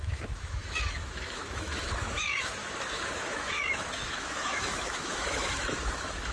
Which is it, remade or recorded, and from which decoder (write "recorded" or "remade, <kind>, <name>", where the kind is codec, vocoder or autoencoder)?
remade, autoencoder, DAC-VAE